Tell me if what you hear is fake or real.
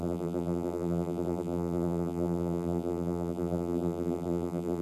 fake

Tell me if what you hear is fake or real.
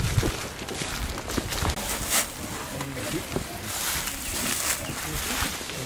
real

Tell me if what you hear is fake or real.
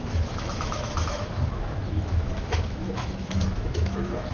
fake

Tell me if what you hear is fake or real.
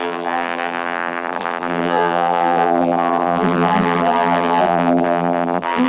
fake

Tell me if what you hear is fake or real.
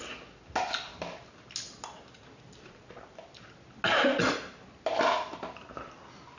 real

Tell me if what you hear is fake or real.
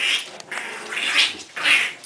real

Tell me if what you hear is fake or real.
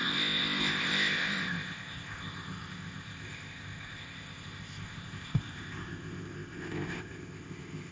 fake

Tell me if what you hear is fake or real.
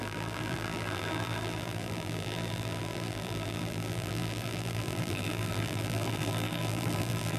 fake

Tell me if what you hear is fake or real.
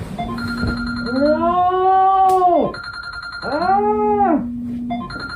real